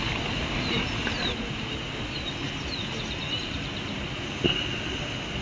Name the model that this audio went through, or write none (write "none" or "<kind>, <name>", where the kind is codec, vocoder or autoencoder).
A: none